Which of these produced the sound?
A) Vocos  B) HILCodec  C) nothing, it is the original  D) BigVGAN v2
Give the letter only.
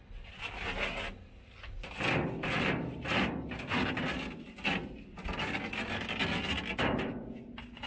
C